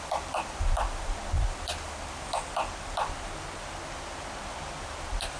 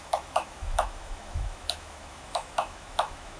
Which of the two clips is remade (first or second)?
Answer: second